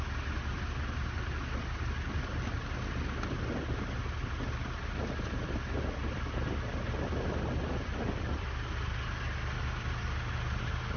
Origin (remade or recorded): recorded